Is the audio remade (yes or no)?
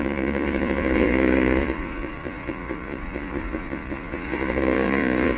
yes